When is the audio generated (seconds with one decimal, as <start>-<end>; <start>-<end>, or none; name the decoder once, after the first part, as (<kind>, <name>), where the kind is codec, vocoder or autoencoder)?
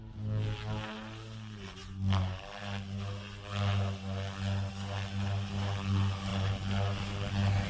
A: none